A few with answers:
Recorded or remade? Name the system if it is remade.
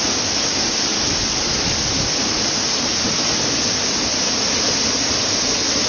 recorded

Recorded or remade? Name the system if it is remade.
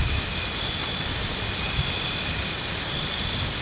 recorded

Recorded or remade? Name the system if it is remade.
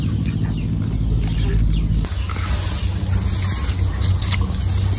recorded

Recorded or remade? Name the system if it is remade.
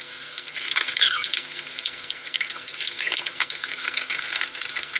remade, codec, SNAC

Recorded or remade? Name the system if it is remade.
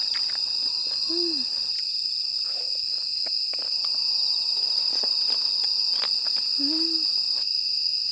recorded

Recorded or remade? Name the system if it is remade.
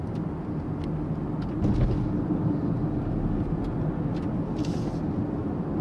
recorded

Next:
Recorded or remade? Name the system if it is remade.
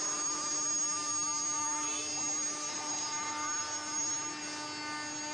recorded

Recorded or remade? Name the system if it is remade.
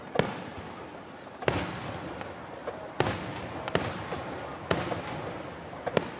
recorded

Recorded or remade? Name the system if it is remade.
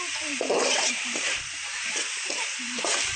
remade, vocoder, BigVGAN v2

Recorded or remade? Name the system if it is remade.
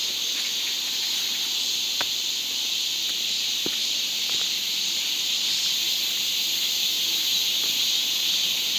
remade, vocoder, BigVGAN v2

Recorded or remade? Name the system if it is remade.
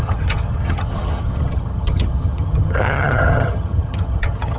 remade, vocoder, HiFi-GAN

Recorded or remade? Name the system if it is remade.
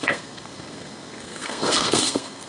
remade, codec, SNAC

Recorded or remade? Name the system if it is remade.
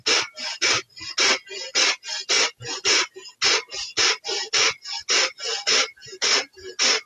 recorded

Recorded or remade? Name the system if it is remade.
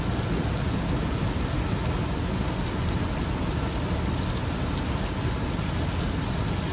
recorded